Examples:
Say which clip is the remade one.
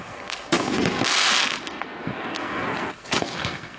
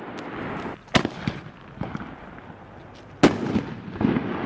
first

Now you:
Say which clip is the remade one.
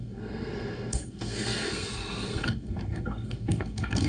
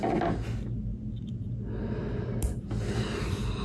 first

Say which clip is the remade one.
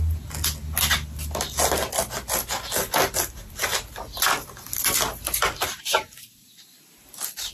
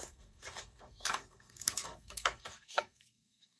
second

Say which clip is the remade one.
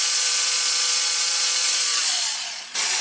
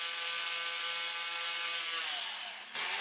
first